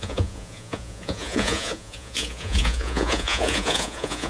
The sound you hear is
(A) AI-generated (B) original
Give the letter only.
A